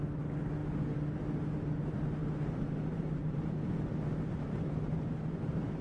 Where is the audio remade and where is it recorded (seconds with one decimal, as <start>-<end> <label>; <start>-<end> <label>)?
0.0-2.2 recorded; 2.2-5.8 remade